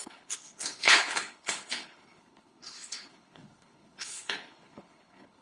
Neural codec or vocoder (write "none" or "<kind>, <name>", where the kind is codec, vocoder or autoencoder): codec, HILCodec